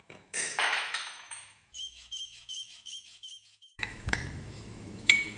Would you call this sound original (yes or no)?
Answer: no